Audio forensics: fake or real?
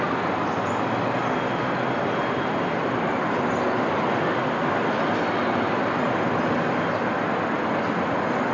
real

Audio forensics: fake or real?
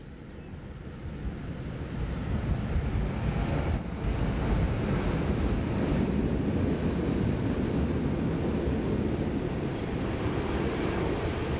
real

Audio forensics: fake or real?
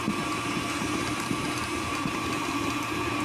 fake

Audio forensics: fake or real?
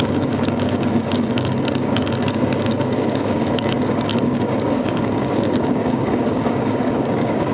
fake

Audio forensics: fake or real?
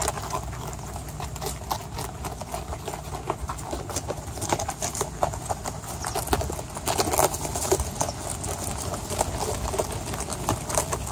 real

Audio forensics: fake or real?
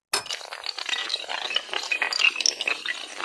real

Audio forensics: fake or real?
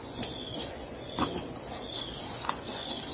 fake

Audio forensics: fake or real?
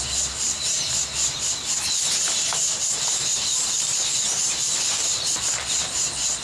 real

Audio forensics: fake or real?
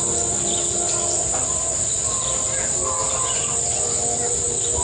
real